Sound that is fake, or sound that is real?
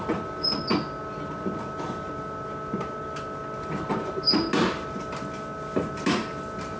real